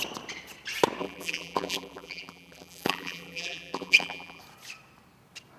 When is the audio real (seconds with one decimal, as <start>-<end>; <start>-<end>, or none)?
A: 0.0-1.0; 4.4-5.6